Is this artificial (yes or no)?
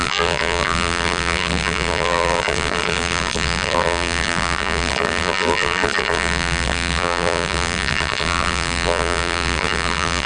yes